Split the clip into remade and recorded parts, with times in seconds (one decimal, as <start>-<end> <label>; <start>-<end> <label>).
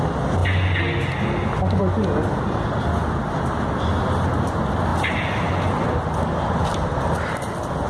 0.0-7.9 recorded